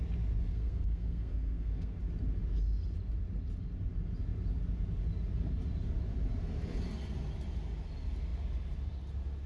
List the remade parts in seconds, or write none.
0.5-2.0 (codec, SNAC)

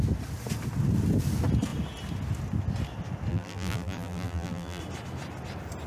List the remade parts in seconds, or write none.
3.3-4.8 (vocoder, BigVGAN v2)

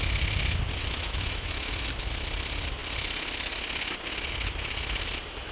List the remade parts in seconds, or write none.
0.8-1.7 (autoencoder, DAC-VAE)

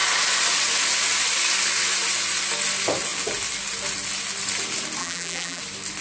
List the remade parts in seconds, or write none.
5.0-5.6 (vocoder, BigVGAN v2)